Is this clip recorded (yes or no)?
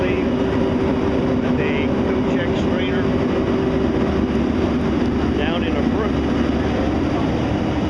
yes